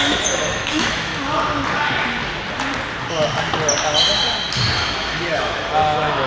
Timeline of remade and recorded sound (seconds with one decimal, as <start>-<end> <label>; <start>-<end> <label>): 0.0-1.1 remade; 1.1-4.9 recorded; 4.9-6.3 remade